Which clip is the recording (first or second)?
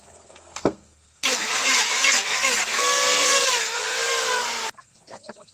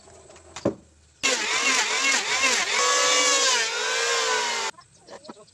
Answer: second